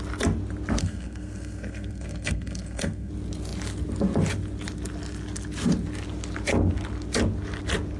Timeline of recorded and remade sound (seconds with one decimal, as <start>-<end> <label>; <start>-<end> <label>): 0.0-0.8 recorded; 0.8-3.1 remade; 3.1-8.0 recorded